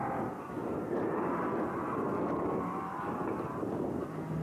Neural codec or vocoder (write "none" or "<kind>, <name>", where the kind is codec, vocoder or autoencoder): none